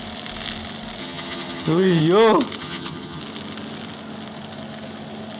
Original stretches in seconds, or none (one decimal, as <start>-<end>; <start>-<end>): 0.0-1.0; 2.0-2.6; 3.2-5.4